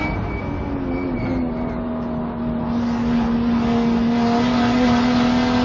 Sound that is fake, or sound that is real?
real